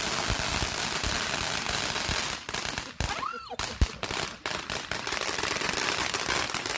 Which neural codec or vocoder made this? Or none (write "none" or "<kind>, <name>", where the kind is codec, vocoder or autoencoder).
vocoder, BigVGAN v2